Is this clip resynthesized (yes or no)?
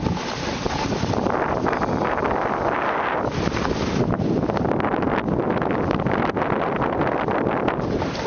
no